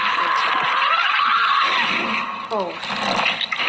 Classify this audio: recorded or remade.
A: recorded